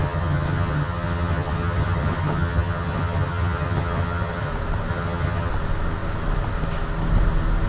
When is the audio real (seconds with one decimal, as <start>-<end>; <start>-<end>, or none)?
4.5-4.9; 5.5-7.7

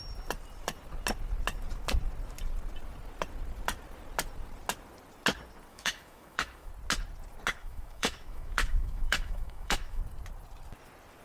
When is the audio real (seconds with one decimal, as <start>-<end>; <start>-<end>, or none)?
0.0-5.7; 6.7-7.6; 10.0-11.2

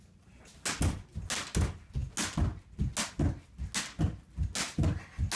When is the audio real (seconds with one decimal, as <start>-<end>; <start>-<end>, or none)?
0.0-5.4